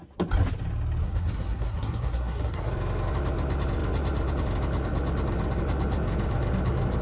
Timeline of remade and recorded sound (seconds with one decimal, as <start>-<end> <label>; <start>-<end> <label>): 0.0-1.0 recorded; 1.0-2.7 remade; 2.7-7.0 recorded